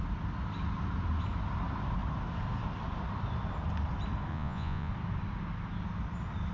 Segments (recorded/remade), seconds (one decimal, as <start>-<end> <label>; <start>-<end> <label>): 0.0-4.3 recorded; 4.3-4.9 remade; 4.9-6.5 recorded